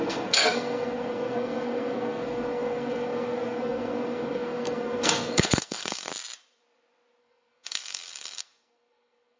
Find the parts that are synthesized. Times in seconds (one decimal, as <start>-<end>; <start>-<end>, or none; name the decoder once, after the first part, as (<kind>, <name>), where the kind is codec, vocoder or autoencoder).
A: 0.0-6.1 (codec, SNAC); 7.2-9.4